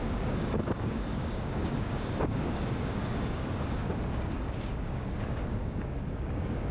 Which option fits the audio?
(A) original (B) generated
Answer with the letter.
B